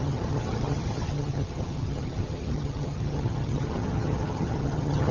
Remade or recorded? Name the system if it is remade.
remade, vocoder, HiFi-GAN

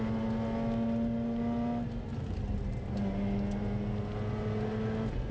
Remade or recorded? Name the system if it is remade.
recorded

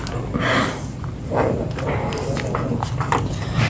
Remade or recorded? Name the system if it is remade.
recorded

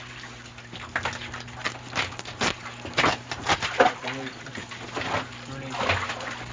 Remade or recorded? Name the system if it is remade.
recorded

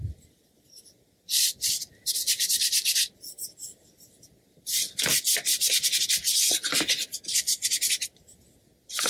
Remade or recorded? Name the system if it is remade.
recorded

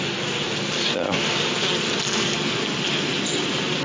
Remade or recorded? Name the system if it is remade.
recorded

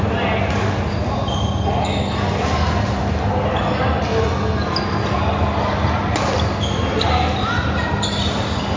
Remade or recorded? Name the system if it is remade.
recorded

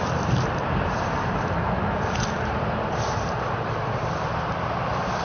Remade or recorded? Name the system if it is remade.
remade, vocoder, BigVGAN v2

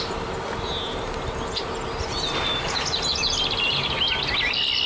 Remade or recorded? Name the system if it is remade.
recorded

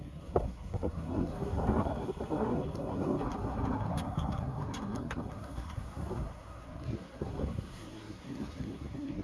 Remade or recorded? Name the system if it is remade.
remade, codec, SNAC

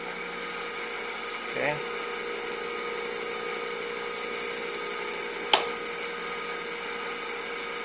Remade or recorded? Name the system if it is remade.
recorded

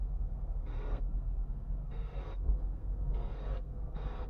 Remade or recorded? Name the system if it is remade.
remade, codec, SNAC